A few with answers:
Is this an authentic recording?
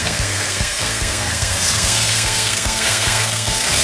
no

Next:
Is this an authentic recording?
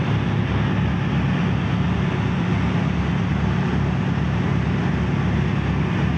yes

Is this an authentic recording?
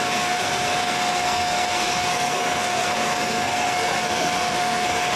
no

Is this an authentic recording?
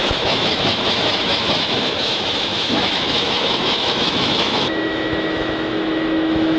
no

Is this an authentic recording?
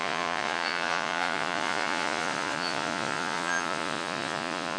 no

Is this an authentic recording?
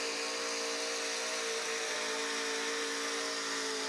yes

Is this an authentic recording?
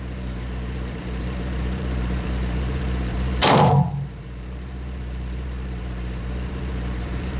no